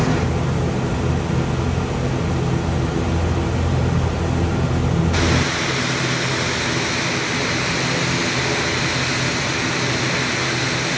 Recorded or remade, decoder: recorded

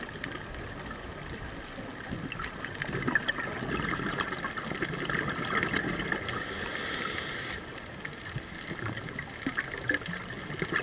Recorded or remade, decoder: recorded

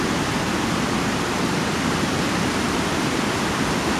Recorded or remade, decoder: recorded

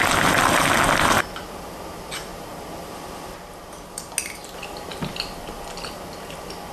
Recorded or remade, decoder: recorded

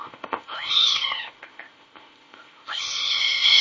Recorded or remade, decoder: remade, codec, ZipCodec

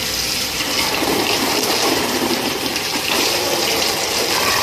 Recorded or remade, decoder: remade, vocoder, BigVGAN v2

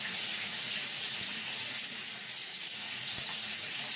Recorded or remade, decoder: remade, vocoder, Vocos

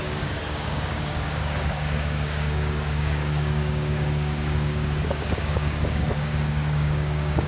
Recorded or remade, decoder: remade, codec, DAC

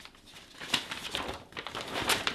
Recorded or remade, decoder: recorded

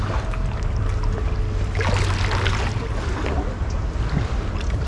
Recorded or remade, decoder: recorded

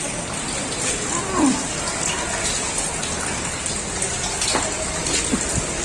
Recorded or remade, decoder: recorded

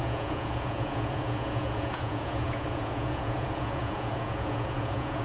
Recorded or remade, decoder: remade, vocoder, Vocos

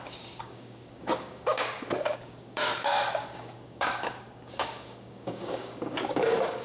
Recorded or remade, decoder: remade, codec, DAC